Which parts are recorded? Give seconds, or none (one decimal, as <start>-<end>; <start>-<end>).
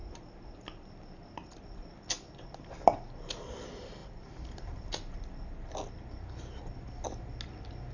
0.0-7.9